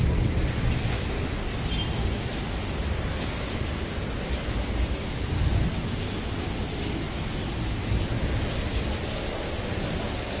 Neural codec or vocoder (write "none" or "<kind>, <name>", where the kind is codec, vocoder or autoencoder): none